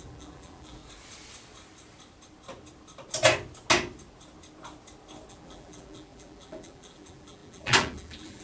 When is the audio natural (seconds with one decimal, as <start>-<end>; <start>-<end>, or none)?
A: 0.8-5.3